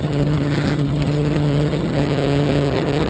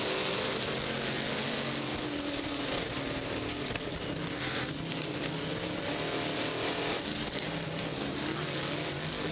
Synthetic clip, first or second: first